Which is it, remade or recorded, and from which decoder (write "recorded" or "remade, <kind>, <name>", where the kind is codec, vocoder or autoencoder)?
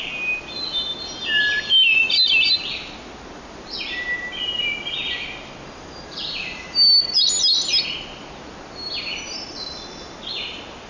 recorded